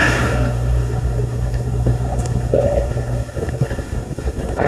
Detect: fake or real fake